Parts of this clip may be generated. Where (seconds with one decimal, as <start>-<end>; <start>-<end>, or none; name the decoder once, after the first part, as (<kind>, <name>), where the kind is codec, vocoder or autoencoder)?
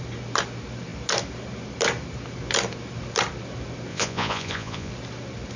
3.9-4.9 (vocoder, Vocos)